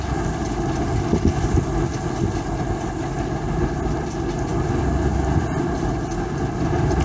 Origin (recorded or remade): recorded